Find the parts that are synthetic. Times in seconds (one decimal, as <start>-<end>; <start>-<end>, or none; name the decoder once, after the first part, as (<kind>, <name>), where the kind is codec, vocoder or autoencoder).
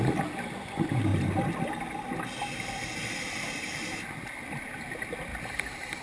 none